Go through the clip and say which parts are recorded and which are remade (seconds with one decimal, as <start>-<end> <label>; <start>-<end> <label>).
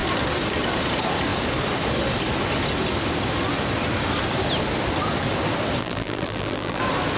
0.0-5.8 recorded; 5.8-6.8 remade; 6.8-7.2 recorded